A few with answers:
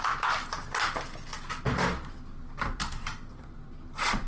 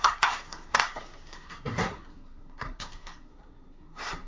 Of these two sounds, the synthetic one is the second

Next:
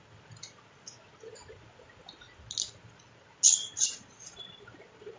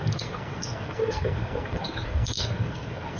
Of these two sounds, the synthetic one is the second